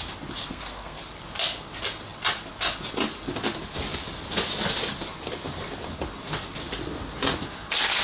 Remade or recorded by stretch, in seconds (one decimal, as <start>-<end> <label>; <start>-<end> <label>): 0.0-0.4 recorded; 0.4-1.0 remade; 1.0-8.0 recorded